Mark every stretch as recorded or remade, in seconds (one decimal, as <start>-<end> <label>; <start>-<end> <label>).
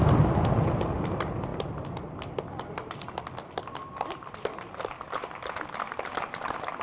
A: 0.0-6.8 recorded